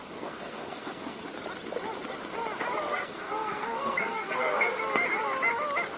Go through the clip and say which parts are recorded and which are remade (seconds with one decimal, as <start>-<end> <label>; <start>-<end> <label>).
0.0-1.2 remade; 1.2-2.9 recorded; 2.9-4.8 remade; 4.8-6.0 recorded